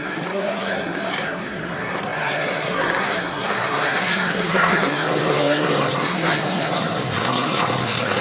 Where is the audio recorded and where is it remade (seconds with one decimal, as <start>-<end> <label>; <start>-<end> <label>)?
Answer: 0.0-8.2 remade

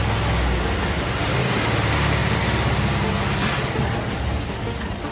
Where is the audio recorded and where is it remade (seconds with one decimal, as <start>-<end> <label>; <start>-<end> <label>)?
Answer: 0.0-5.1 recorded

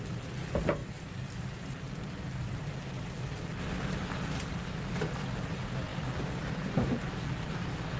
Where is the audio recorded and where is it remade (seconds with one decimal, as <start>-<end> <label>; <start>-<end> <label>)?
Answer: 0.0-8.0 recorded

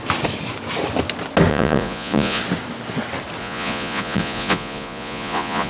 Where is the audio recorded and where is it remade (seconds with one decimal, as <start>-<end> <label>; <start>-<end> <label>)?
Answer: 0.0-1.5 recorded; 1.5-2.4 remade; 2.4-3.4 recorded; 3.4-5.7 remade